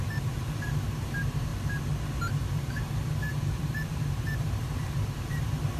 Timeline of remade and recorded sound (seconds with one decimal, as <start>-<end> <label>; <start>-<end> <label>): 0.0-1.5 remade; 1.5-2.5 recorded; 2.5-5.8 remade